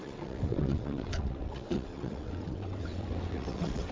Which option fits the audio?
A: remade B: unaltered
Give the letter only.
A